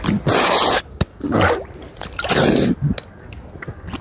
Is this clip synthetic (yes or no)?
no